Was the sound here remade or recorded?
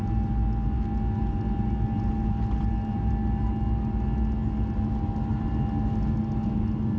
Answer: recorded